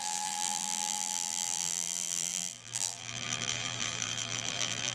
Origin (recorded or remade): remade